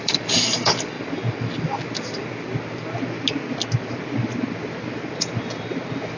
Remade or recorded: recorded